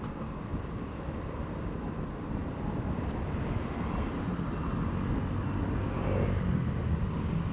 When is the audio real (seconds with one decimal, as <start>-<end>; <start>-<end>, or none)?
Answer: 0.0-7.5